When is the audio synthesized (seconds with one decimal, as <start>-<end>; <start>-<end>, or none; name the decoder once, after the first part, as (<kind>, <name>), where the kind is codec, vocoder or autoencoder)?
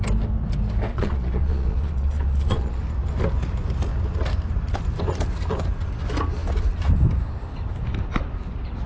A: 0.9-2.8 (vocoder, Vocos)